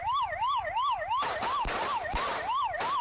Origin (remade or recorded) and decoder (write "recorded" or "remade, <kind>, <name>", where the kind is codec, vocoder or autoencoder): recorded